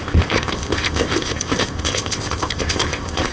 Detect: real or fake fake